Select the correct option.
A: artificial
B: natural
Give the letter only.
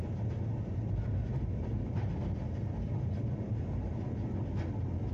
B